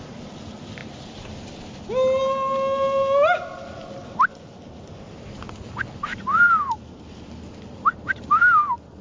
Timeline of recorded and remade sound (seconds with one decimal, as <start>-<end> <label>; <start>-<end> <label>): 0.0-9.0 recorded